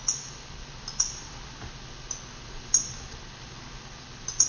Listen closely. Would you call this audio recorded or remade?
recorded